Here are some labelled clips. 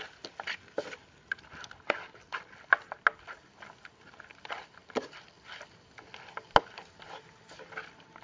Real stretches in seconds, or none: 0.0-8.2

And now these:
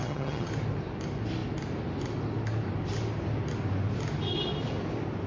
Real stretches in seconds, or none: 0.5-5.3

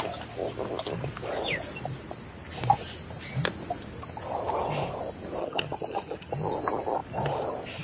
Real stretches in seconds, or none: 0.0-5.4; 6.3-7.8